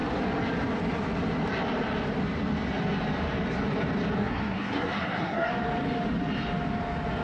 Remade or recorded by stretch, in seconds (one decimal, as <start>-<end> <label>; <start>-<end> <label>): 0.0-4.2 recorded; 4.2-5.5 remade; 5.5-7.2 recorded